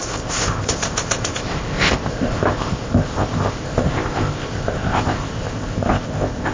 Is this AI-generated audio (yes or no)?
yes